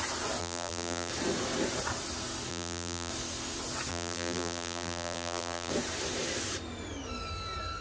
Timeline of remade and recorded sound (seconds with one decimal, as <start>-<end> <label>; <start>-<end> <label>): 0.0-0.4 recorded; 0.4-1.1 remade; 1.1-2.5 recorded; 2.5-3.1 remade; 3.1-3.9 recorded; 3.9-5.7 remade; 5.7-7.8 recorded